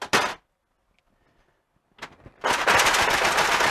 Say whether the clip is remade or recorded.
recorded